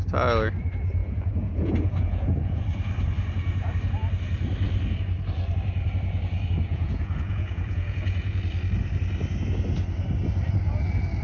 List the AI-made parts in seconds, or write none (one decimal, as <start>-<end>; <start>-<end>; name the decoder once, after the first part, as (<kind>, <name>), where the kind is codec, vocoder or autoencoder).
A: 1.0-2.6 (vocoder, Vocos); 6.7-8.4